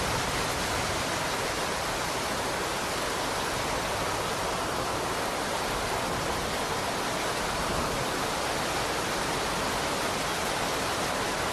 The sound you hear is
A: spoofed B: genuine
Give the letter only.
B